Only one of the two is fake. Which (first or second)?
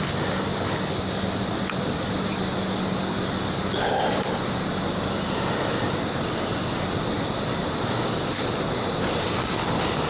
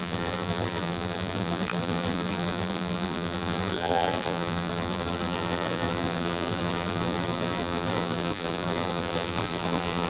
second